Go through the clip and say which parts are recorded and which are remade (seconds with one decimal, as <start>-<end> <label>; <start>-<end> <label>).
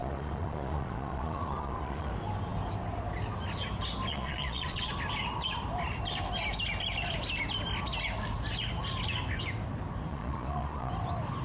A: 0.0-2.1 remade; 2.1-4.1 recorded; 4.1-4.9 remade; 4.9-10.1 recorded; 10.1-10.9 remade; 10.9-11.4 recorded